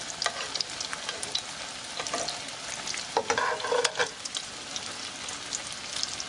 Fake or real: real